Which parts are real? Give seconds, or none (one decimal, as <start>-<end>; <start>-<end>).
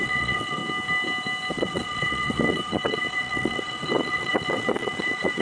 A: 0.6-1.5